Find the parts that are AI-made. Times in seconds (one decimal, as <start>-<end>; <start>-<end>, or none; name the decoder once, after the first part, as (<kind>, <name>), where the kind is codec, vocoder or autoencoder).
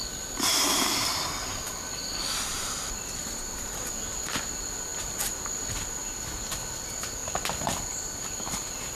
none